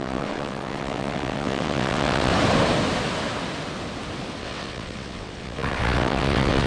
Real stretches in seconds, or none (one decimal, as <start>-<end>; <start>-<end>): 2.3-4.4